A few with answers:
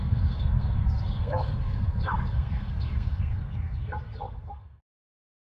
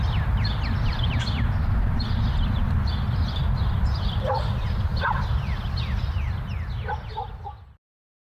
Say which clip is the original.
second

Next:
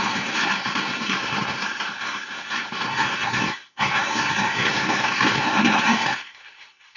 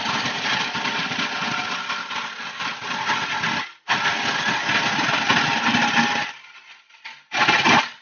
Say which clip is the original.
second